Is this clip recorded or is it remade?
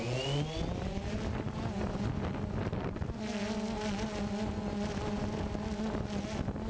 recorded